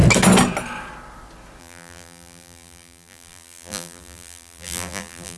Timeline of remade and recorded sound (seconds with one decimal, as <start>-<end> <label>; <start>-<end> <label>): 0.0-1.6 recorded; 1.6-5.4 remade